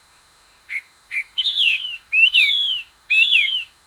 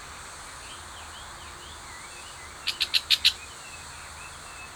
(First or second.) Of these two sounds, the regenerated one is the first